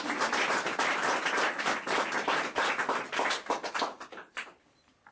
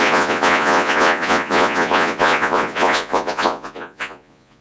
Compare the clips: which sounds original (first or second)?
first